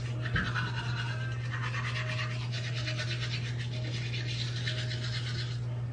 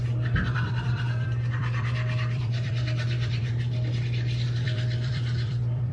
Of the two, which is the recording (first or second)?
first